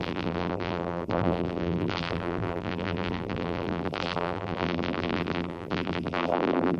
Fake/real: fake